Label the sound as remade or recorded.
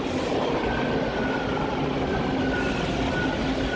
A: recorded